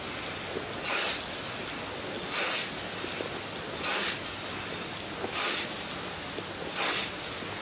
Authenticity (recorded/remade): recorded